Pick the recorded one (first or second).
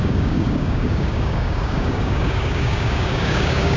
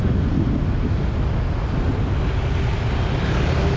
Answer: second